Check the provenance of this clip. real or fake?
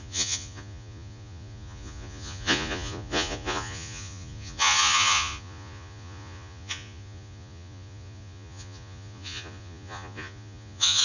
fake